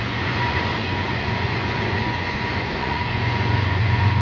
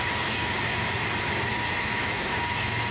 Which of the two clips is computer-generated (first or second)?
first